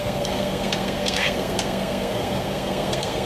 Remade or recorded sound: remade